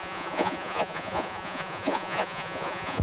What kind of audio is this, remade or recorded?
remade